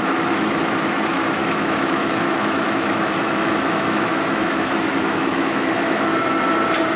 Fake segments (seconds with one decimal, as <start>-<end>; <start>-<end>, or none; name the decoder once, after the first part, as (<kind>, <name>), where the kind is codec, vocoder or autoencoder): 0.0-6.1 (autoencoder, DAC-VAE)